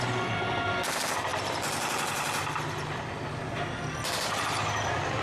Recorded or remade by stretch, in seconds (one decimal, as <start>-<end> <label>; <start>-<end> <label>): 0.0-5.2 recorded